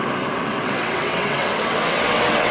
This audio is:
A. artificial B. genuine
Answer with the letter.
A